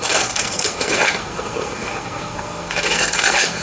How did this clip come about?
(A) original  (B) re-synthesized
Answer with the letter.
B